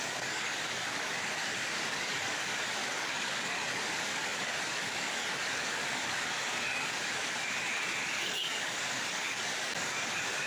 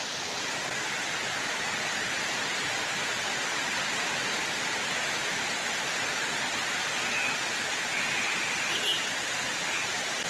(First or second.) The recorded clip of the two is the second